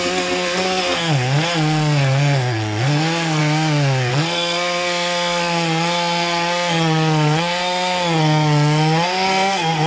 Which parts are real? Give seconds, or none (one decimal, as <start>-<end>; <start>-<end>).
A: 3.4-4.1